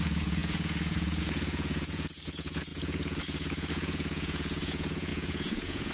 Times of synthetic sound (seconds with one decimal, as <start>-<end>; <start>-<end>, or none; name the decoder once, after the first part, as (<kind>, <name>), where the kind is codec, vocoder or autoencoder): 0.0-5.9 (vocoder, Vocos)